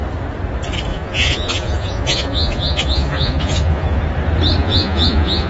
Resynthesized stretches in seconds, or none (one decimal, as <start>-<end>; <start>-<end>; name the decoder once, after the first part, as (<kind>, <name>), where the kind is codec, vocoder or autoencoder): 0.9-4.0 (vocoder, Vocos); 4.6-5.5